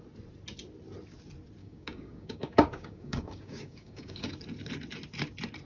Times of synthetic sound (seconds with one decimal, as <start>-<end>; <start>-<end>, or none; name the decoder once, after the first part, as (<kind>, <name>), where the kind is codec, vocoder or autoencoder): 1.6-4.3 (codec, DAC)